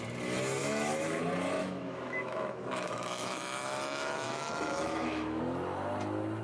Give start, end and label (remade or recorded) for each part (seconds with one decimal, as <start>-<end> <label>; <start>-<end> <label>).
0.0-0.6 recorded; 0.6-1.2 remade; 1.2-1.6 recorded; 1.6-5.4 remade; 5.4-6.4 recorded